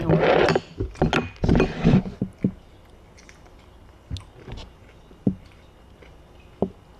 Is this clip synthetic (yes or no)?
no